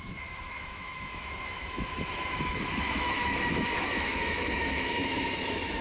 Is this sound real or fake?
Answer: fake